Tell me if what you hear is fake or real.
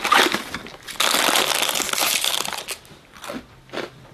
real